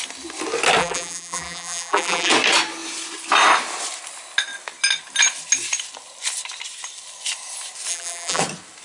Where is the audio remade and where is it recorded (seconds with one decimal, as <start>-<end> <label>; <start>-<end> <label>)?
0.0-0.8 recorded; 0.8-2.3 remade; 2.3-7.9 recorded; 7.9-8.4 remade; 8.4-8.8 recorded